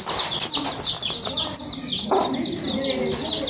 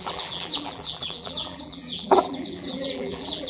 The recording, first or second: first